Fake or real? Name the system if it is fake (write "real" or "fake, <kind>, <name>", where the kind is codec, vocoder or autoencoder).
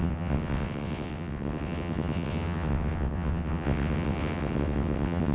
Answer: fake, vocoder, WaveNeXt